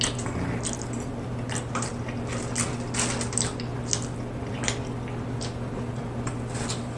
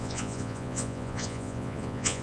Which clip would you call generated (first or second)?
second